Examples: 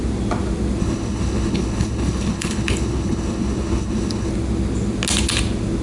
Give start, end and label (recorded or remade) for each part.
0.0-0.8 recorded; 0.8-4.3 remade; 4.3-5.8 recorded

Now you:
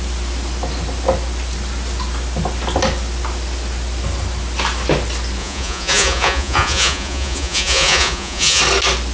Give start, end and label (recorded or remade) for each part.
0.0-5.4 recorded; 5.4-8.6 remade; 8.6-9.1 recorded

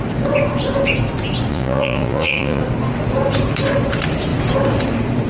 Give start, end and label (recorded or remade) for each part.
0.0-1.5 recorded; 1.5-2.6 remade; 2.6-5.3 recorded

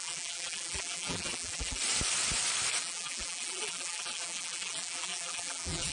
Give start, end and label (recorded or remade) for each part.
0.0-1.8 remade; 1.8-2.8 recorded; 2.8-5.9 remade

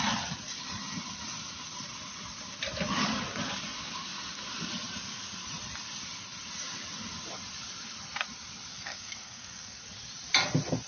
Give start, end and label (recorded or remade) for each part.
0.0-8.7 recorded; 8.7-9.8 remade; 9.8-10.9 recorded